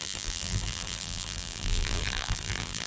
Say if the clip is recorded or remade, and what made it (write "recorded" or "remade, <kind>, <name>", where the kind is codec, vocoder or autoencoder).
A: remade, vocoder, BigVGAN v2